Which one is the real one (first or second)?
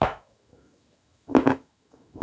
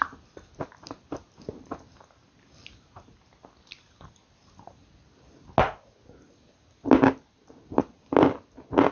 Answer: second